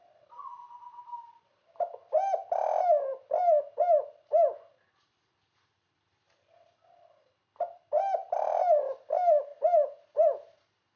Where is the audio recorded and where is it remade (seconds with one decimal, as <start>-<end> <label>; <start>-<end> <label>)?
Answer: 0.0-11.0 recorded